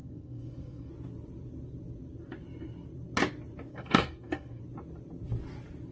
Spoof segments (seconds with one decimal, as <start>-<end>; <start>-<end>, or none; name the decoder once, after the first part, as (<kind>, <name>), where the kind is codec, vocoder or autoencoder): 0.0-0.9 (codec, SNAC); 3.7-4.6